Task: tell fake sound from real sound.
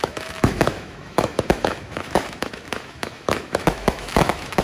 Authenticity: fake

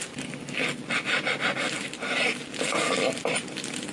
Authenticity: real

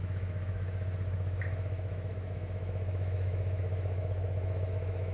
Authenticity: fake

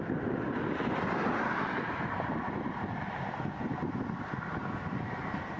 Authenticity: real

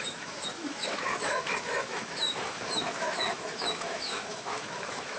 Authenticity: fake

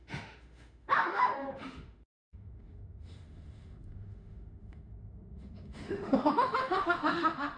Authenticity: fake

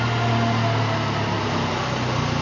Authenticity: real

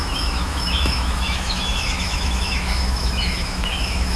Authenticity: fake